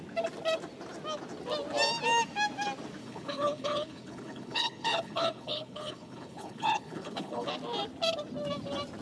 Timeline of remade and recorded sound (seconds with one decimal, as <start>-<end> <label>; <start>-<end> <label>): 0.0-3.0 recorded; 3.0-7.5 remade; 7.5-9.0 recorded